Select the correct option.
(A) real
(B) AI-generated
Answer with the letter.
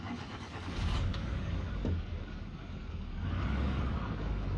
B